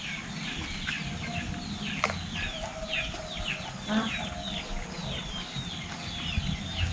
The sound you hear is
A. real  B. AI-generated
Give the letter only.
A